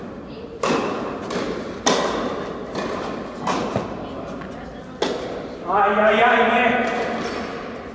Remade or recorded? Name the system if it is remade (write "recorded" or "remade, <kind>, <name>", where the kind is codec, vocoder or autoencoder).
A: recorded